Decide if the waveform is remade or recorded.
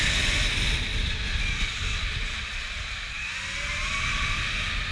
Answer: recorded